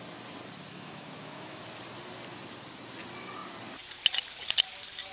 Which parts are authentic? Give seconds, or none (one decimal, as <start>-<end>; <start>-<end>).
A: 0.0-0.7; 1.6-5.1